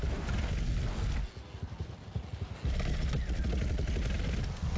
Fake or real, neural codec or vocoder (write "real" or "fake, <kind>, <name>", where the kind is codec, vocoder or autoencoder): real